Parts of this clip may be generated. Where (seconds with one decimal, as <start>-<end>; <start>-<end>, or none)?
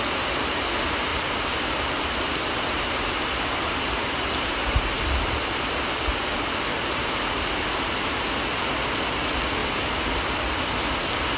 1.1-4.8; 6.7-8.2; 9.6-10.2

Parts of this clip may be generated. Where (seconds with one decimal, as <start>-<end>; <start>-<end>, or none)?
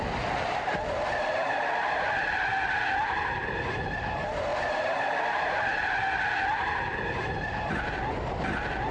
none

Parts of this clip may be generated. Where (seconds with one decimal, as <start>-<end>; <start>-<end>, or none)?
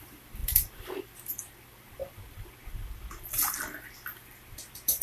0.0-5.0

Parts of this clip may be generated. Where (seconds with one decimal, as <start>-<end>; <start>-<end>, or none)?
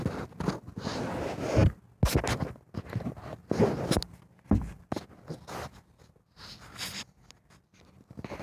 none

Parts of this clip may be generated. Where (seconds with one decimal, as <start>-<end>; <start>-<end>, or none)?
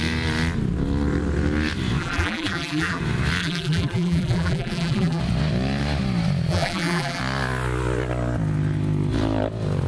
2.0-3.0; 3.4-5.2; 6.5-7.2